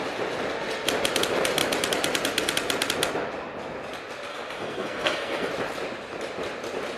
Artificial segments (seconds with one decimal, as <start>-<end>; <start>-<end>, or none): 4.3-5.5